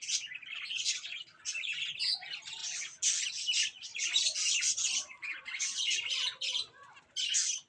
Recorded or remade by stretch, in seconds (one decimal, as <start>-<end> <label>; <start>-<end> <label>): 0.0-7.7 recorded